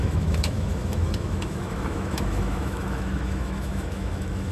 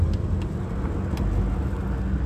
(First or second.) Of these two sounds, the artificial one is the first